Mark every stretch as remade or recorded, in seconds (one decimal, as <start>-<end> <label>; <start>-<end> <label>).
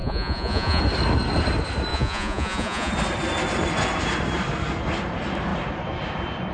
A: 0.0-0.8 remade; 0.8-1.9 recorded; 1.9-2.9 remade; 2.9-6.5 recorded